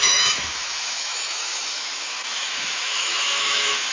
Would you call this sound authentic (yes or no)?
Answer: no